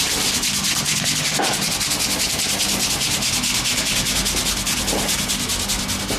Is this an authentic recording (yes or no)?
yes